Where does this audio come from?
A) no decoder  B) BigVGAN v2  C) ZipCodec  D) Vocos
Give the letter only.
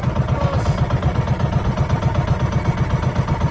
A